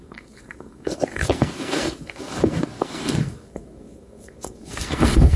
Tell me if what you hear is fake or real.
fake